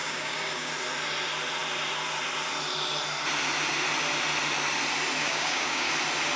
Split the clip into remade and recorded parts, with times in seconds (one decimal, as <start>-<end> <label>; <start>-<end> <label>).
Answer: 0.0-0.7 remade; 0.7-5.2 recorded; 5.2-5.9 remade; 5.9-6.4 recorded

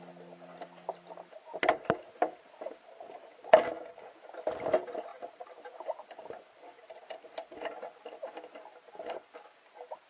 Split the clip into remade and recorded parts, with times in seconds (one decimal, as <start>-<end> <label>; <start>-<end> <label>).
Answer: 0.0-3.4 recorded; 3.4-4.1 remade; 4.1-10.1 recorded

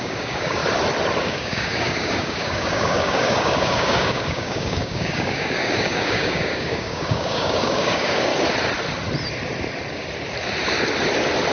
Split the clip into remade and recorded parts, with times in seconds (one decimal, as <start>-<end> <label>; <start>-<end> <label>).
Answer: 0.0-0.6 remade; 0.6-1.2 recorded; 1.2-8.3 remade; 8.3-11.5 recorded

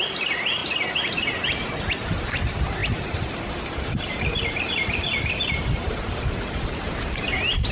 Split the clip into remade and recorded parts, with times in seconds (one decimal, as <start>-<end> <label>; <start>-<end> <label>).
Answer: 0.0-7.7 recorded

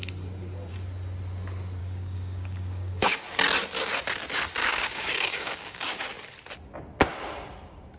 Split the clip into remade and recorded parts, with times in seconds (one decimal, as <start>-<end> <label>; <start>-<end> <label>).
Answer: 0.0-1.8 recorded; 1.8-3.2 remade; 3.2-4.6 recorded; 4.6-6.0 remade; 6.0-8.0 recorded

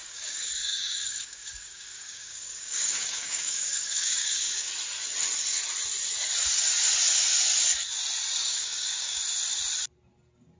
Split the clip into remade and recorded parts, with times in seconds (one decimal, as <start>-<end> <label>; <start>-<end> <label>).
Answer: 0.0-4.7 remade; 4.7-8.4 recorded; 8.4-9.2 remade; 9.2-10.6 recorded

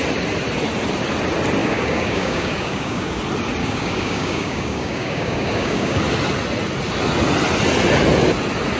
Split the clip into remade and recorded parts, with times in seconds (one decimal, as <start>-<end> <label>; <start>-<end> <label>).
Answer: 0.0-1.6 recorded; 1.6-3.2 remade; 3.2-3.6 recorded; 3.6-6.0 remade; 6.0-8.8 recorded

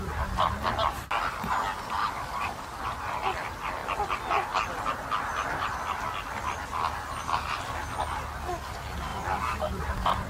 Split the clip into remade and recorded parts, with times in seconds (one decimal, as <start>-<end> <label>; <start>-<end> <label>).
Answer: 0.0-2.0 recorded; 2.0-2.8 remade; 2.8-10.3 recorded